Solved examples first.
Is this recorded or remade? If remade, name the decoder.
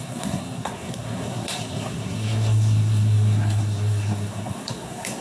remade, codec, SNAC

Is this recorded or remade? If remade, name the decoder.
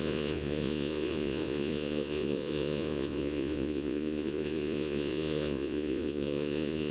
remade, vocoder, Vocos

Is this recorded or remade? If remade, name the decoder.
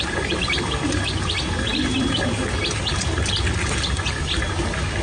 recorded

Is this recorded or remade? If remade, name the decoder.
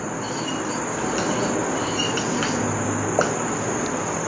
recorded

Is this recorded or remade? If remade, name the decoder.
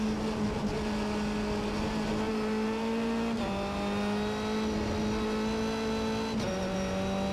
recorded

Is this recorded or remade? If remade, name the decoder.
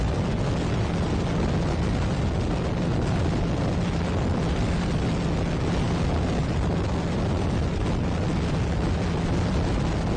recorded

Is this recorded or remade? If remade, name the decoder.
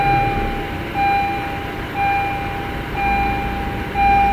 recorded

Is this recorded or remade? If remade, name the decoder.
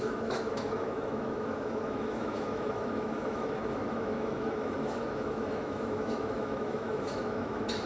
remade, autoencoder, DAC-VAE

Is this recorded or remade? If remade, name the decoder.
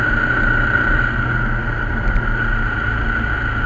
recorded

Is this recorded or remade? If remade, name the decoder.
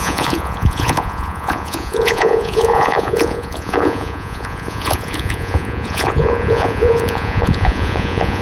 remade, vocoder, Vocos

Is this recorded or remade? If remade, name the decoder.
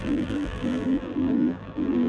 remade, vocoder, BigVGAN v2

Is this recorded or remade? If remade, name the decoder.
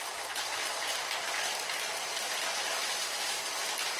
recorded